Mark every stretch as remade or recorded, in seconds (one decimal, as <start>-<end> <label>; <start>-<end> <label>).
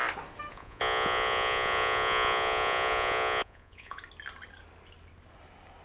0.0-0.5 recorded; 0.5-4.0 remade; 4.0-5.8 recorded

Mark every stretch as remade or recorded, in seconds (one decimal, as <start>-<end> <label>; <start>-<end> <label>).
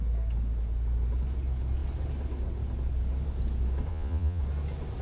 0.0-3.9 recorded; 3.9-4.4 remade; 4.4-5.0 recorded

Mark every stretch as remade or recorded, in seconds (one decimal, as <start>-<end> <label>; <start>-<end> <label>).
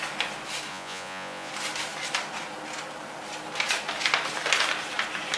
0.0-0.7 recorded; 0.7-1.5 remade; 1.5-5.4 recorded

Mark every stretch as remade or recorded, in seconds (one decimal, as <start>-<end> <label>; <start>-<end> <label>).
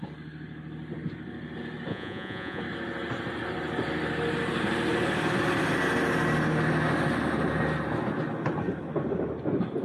0.0-1.9 recorded; 1.9-2.6 remade; 2.6-9.8 recorded